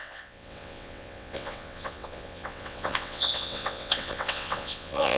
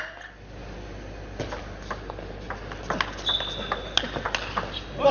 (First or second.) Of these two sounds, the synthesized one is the first